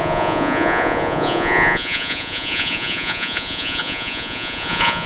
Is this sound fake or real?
fake